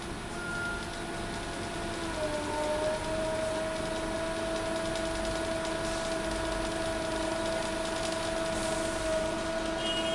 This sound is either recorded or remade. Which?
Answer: recorded